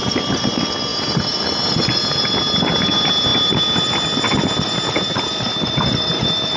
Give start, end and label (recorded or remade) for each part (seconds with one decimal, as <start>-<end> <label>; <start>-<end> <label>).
0.0-6.6 recorded